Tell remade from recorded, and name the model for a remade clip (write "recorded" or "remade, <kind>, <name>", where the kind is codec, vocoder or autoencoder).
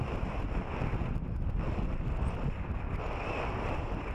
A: recorded